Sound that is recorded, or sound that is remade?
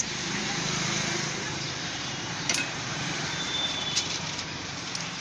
remade